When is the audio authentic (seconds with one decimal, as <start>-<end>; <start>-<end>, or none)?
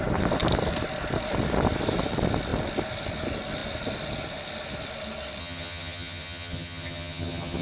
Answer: 0.0-5.4